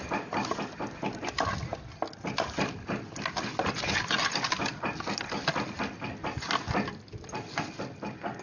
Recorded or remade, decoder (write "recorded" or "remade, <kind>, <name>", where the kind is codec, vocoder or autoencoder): recorded